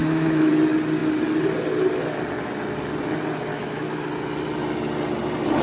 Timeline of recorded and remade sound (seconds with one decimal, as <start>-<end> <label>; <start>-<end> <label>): 0.0-0.5 remade; 0.5-3.5 recorded; 3.5-4.1 remade; 4.1-5.6 recorded